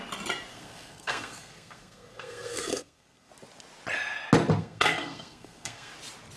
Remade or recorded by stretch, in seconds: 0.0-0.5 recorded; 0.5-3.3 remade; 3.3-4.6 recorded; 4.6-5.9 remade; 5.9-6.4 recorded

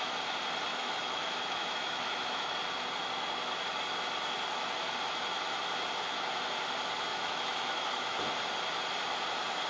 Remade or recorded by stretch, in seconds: 0.0-0.7 recorded; 0.7-2.5 remade; 2.5-7.1 recorded; 7.1-8.2 remade; 8.2-9.7 recorded

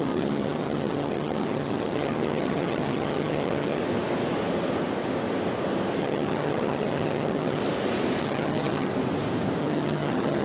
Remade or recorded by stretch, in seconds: 0.0-3.8 remade; 3.8-6.0 recorded; 6.0-7.6 remade; 7.6-8.2 recorded; 8.2-8.9 remade; 8.9-9.6 recorded; 9.6-10.4 remade